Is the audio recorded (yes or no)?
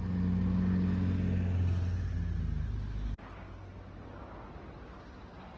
yes